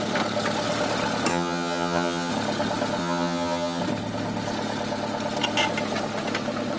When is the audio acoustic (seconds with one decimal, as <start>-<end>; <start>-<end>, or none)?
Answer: 0.0-1.3; 2.3-3.0; 3.8-6.8